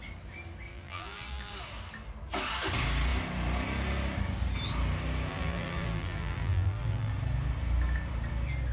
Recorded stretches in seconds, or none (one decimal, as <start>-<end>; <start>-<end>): 0.0-0.7; 1.5-5.3; 7.1-8.7